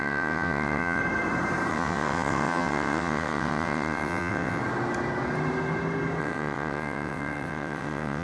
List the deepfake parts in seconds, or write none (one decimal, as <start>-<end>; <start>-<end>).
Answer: 0.0-1.0; 1.7-4.6; 6.2-8.2